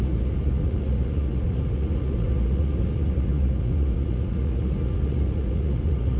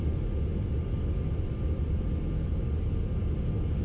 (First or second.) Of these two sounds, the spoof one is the first